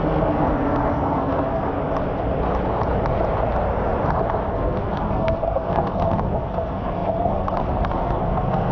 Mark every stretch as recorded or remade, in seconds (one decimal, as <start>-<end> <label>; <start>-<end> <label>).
0.0-1.7 remade; 1.7-4.5 recorded; 4.5-8.7 remade